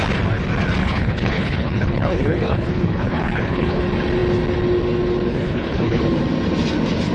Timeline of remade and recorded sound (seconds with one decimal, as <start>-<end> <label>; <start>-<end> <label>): 0.0-0.8 recorded; 0.8-3.8 remade; 3.8-5.3 recorded; 5.3-6.0 remade; 6.0-7.1 recorded